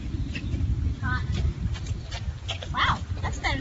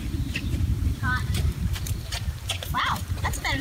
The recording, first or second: first